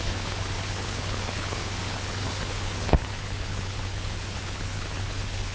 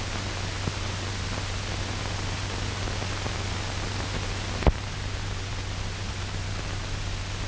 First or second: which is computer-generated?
first